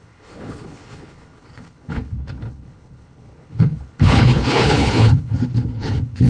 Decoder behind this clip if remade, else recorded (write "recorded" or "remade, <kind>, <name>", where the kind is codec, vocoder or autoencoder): remade, codec, HILCodec